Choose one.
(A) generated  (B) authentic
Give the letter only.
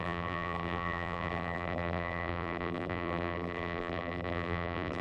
A